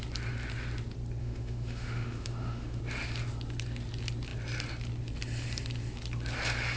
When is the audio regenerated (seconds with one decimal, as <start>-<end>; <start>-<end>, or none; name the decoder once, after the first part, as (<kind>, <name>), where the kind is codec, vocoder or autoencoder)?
1.2-2.8 (autoencoder, DAC-VAE)